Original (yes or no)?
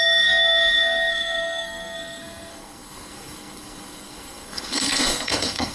no